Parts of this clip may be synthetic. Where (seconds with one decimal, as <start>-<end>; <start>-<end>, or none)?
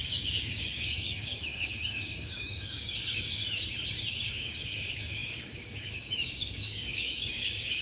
0.0-3.4; 4.2-7.8